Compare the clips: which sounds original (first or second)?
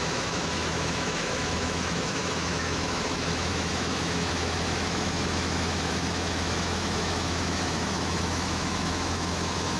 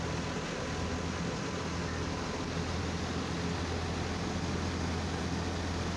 second